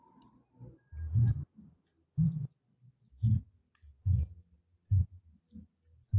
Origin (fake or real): real